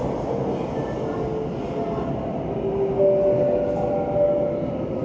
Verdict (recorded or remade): recorded